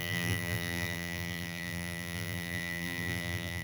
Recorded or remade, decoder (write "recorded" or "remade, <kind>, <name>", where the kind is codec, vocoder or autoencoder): remade, vocoder, BigVGAN v2